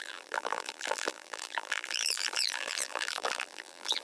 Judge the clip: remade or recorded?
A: remade